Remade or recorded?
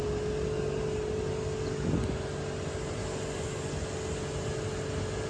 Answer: recorded